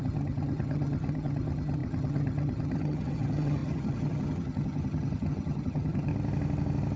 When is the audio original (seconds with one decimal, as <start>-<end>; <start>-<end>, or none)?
6.1-7.0